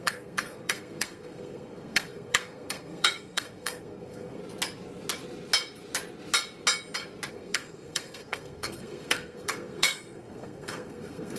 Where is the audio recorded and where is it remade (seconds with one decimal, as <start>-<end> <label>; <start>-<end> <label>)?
0.0-4.4 remade; 4.4-7.3 recorded; 7.3-11.4 remade